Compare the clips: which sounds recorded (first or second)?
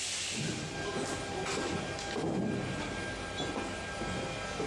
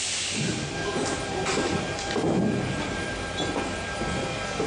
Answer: first